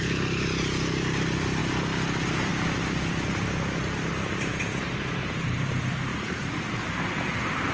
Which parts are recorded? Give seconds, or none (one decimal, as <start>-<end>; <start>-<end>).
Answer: 0.0-6.1; 6.8-7.7